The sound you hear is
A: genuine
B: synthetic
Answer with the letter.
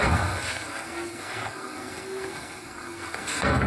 B